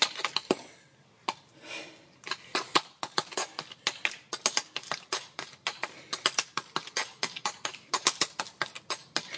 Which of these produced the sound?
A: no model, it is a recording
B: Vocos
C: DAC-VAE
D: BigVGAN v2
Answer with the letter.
A